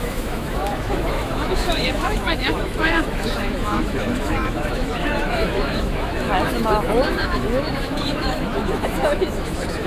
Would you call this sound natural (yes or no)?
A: no